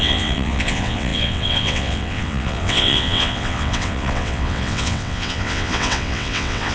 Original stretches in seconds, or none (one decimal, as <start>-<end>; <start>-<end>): none